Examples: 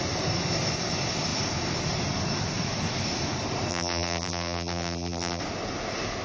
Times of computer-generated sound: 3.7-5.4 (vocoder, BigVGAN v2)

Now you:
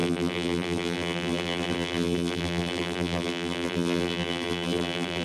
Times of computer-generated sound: 0.0-5.2 (vocoder, BigVGAN v2)